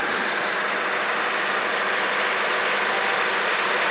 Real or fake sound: real